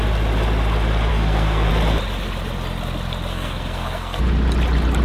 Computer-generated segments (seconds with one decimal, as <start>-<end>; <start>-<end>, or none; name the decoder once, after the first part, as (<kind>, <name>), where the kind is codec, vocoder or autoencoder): 1.1-1.7 (codec, SNAC); 3.3-4.2